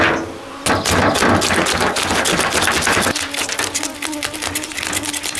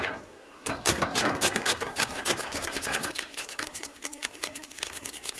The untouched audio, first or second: first